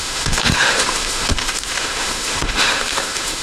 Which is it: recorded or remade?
remade